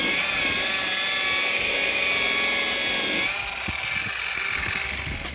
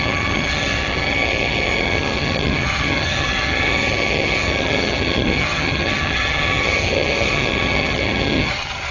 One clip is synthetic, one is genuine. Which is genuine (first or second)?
first